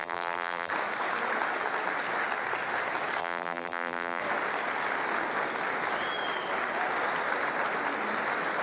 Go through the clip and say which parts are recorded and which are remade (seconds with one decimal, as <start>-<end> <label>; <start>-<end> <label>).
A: 0.0-0.7 remade; 0.7-3.2 recorded; 3.2-4.2 remade; 4.2-8.6 recorded

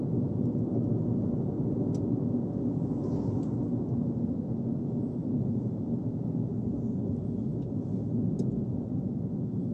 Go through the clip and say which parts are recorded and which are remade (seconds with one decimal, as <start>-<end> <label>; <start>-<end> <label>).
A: 0.0-5.2 recorded; 5.2-5.8 remade; 5.8-9.7 recorded

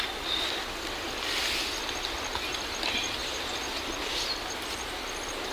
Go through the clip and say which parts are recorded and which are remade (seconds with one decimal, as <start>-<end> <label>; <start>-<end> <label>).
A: 0.0-3.2 recorded; 3.2-4.0 remade; 4.0-5.5 recorded

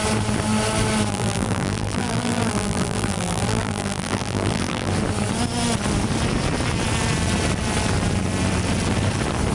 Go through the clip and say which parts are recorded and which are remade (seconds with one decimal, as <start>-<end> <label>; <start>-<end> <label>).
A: 0.0-1.1 recorded; 1.1-4.9 remade; 4.9-9.5 recorded

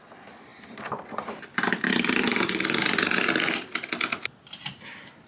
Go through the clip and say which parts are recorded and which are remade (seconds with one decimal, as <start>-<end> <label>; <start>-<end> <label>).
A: 0.0-5.3 remade

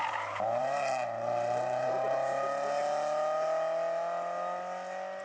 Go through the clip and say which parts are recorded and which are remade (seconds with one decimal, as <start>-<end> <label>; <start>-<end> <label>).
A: 0.0-0.6 recorded; 0.6-1.9 remade; 1.9-5.2 recorded

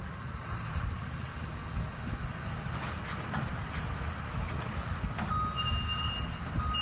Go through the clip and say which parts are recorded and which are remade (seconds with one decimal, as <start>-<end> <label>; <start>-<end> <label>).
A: 0.0-3.5 recorded; 3.5-5.2 remade; 5.2-6.8 recorded

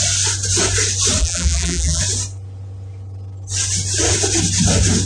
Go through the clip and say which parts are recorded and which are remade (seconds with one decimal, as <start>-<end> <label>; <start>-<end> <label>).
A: 0.0-1.2 recorded; 1.2-2.0 remade; 2.0-5.1 recorded